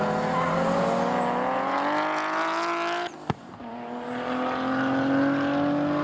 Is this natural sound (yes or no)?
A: yes